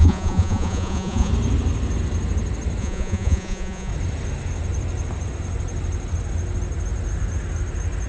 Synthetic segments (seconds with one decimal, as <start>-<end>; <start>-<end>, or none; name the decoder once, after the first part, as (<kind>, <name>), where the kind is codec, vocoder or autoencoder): 0.0-1.3 (vocoder, Vocos); 2.8-3.9